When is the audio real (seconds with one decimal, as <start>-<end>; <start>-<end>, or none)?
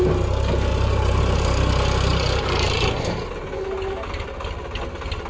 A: 0.0-0.7; 1.2-2.1; 3.2-5.3